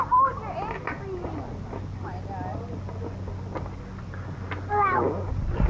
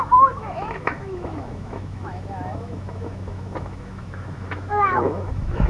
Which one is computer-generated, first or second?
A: second